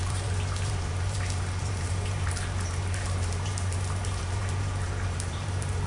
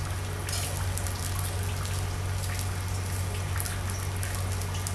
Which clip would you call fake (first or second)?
first